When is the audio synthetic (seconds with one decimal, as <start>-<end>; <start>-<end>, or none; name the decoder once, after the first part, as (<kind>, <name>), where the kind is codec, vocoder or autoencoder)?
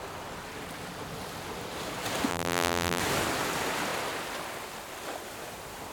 2.3-3.0 (vocoder, BigVGAN v2)